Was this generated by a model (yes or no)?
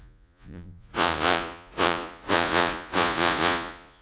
yes